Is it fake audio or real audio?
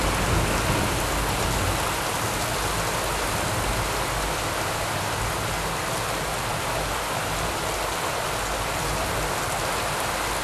real